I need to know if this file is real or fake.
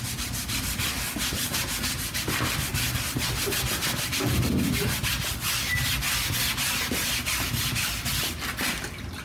real